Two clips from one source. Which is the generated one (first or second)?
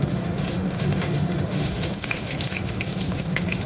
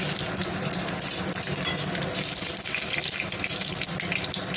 first